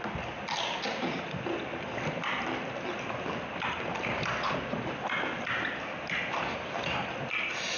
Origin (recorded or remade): recorded